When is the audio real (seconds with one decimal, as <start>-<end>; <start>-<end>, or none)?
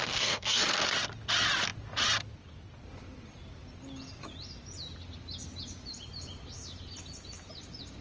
0.8-8.0